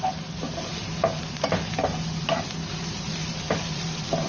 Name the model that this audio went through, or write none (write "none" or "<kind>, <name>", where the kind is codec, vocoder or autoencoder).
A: none